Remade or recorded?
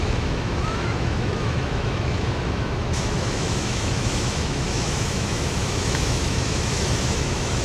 remade